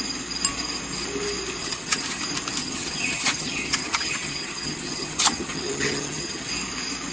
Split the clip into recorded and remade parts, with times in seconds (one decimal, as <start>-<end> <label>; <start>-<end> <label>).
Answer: 0.0-1.6 recorded; 1.6-2.2 remade; 2.2-2.6 recorded; 2.6-6.5 remade; 6.5-7.1 recorded